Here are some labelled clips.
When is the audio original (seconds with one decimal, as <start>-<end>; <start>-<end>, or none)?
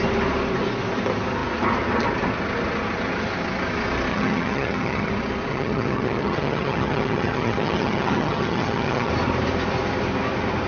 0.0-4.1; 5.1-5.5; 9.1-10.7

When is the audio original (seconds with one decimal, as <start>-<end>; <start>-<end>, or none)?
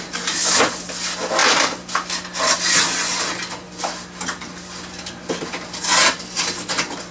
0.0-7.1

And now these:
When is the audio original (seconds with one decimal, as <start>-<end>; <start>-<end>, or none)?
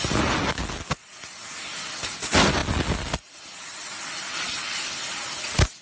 0.0-5.8